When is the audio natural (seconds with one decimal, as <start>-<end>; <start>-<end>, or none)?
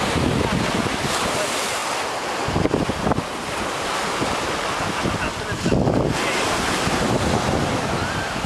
0.0-8.5